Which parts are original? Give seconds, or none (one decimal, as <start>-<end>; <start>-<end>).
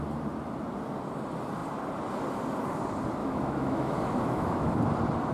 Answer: 0.0-3.2; 4.8-5.3